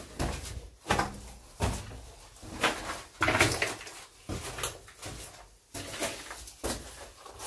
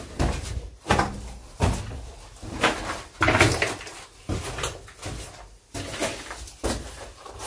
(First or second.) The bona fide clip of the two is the first